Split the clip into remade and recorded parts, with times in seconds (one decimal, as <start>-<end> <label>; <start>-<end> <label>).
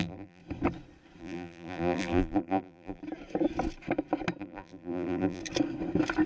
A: 0.0-0.4 remade; 0.4-1.2 recorded; 1.2-3.0 remade; 3.0-4.4 recorded; 4.4-5.4 remade; 5.4-6.3 recorded